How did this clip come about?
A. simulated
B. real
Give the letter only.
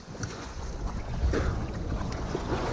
A